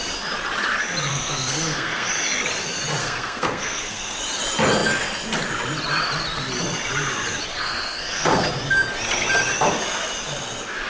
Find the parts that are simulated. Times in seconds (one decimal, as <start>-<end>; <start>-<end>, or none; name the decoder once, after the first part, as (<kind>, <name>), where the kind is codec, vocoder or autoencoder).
1.1-2.1 (codec, SNAC); 3.0-4.2; 7.5-8.6